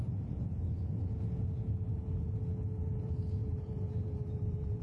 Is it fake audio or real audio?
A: fake